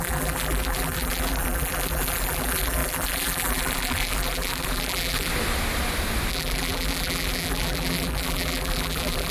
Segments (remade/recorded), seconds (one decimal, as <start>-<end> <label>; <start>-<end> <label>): 0.0-5.3 remade; 5.3-6.3 recorded; 6.3-9.3 remade